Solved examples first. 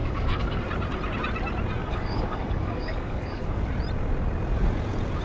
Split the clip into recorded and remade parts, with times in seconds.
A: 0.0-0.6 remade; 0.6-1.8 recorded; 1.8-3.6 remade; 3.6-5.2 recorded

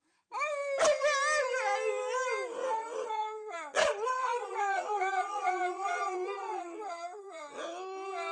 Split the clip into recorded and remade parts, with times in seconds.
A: 0.0-2.6 recorded; 2.6-7.4 remade; 7.4-8.3 recorded

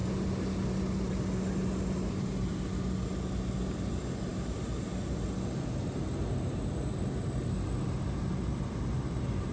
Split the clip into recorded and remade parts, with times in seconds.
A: 0.0-9.5 recorded

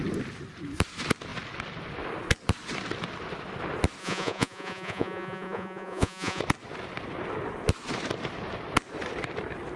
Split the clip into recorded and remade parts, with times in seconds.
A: 0.0-4.0 recorded; 4.0-6.4 remade; 6.4-9.8 recorded

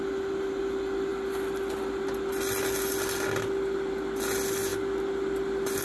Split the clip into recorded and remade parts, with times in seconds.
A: 0.0-5.8 recorded